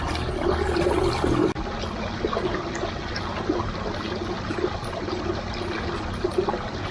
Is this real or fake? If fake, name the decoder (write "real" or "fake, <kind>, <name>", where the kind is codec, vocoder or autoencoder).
real